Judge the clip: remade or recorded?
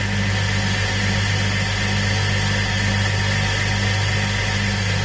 recorded